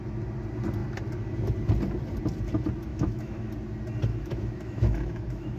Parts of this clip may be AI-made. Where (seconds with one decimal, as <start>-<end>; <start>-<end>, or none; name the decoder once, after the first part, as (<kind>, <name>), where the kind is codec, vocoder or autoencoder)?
2.9-3.5 (autoencoder, DAC-VAE); 4.1-5.6